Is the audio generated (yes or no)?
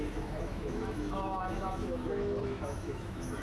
yes